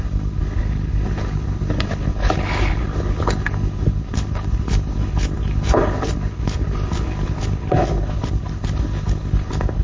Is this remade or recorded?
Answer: remade